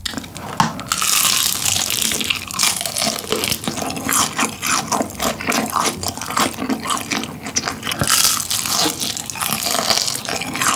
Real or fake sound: real